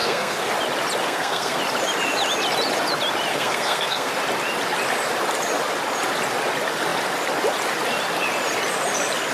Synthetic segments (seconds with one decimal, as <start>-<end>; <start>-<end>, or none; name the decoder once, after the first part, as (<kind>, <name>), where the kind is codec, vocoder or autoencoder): 0.0-0.5 (codec, SNAC); 1.0-1.6; 3.3-4.1

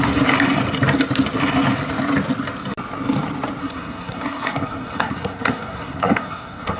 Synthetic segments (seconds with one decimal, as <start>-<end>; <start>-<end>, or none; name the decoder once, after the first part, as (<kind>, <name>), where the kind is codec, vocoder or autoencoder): 3.6-6.8 (codec, SNAC)

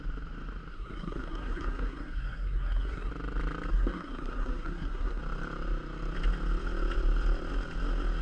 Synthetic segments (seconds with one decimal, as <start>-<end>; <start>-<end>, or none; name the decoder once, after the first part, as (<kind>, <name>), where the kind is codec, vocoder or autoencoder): 0.7-3.1 (codec, SNAC); 3.7-5.2

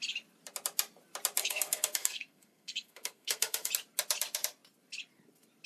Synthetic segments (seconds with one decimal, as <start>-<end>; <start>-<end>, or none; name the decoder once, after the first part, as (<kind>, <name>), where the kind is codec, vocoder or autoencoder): 1.4-3.7 (codec, SNAC)

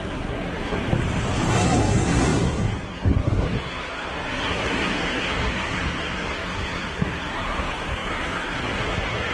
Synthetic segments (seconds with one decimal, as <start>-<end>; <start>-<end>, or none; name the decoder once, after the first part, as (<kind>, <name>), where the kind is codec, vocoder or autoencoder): 0.0-0.8 (codec, SNAC); 1.5-9.3